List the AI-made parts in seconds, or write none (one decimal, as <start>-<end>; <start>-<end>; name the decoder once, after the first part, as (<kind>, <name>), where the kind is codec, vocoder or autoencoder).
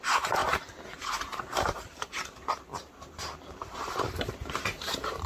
0.0-0.4 (vocoder, BigVGAN v2); 1.8-5.3